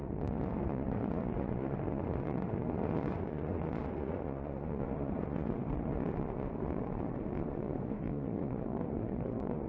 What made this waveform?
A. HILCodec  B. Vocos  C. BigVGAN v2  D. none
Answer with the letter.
B